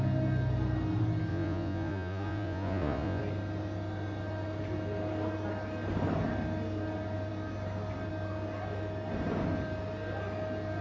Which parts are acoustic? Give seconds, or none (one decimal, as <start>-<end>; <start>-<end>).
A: 0.0-1.3; 3.2-10.8